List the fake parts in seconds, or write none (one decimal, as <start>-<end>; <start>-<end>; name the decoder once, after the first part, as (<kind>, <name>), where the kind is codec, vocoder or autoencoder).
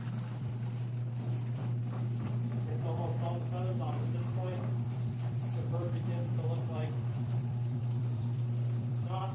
0.0-3.1 (vocoder, BigVGAN v2); 4.2-9.3